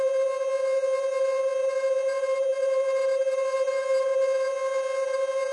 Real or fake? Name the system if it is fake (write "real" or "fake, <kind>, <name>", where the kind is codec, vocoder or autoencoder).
fake, vocoder, Vocos